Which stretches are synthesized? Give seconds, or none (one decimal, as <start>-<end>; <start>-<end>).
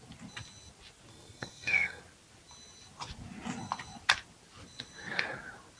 1.1-2.0